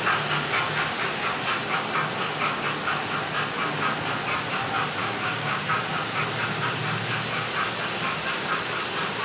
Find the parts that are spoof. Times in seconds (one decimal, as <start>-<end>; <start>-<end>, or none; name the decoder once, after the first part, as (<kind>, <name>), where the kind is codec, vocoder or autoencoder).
5.0-5.6 (codec, DAC)